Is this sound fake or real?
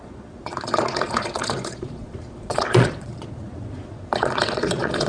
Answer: fake